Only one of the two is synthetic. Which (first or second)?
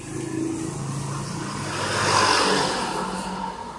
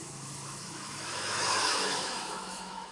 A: second